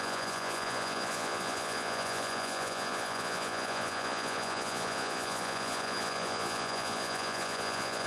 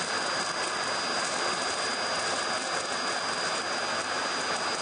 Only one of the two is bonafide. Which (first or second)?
second